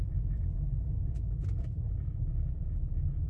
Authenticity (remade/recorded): remade